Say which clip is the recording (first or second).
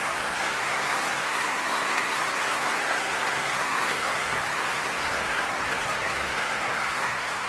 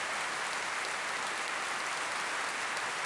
second